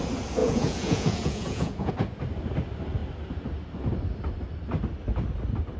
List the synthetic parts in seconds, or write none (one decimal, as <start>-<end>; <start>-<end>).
0.4-1.9